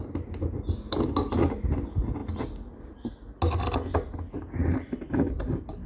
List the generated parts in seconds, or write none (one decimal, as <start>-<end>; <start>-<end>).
none